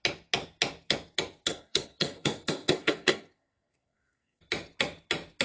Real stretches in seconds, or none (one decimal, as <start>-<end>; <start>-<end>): 0.0-1.5; 4.4-5.4